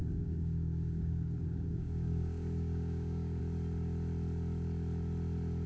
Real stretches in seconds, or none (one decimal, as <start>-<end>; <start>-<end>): 3.4-5.7